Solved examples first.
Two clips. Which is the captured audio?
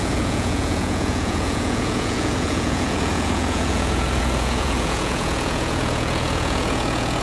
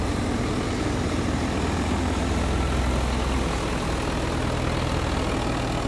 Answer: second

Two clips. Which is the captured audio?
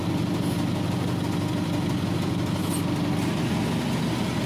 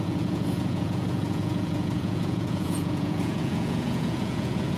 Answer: first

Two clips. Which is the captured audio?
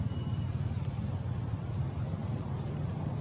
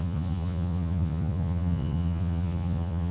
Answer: first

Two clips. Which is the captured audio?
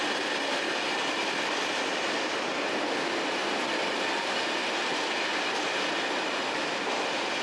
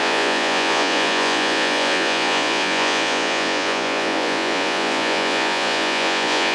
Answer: first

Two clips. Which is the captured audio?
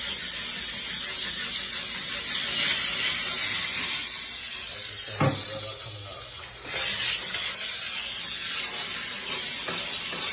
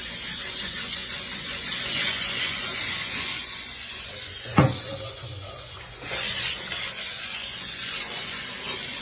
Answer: first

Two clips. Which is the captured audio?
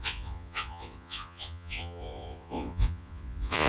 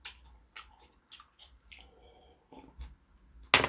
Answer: second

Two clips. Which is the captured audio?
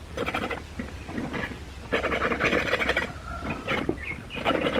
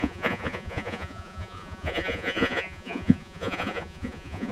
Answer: first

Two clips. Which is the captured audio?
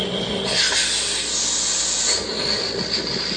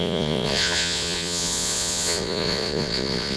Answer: first